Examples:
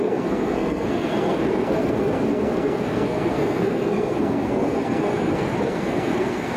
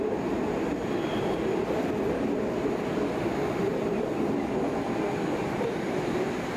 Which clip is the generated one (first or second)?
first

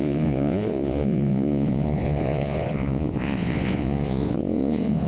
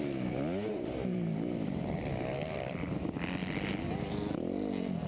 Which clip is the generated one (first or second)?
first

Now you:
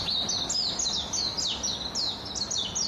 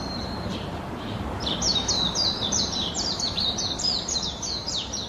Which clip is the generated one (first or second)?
second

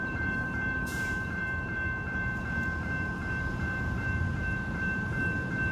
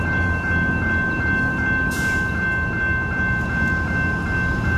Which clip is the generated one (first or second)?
first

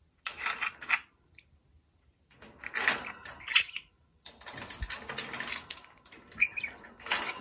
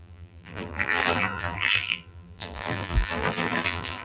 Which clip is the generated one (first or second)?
second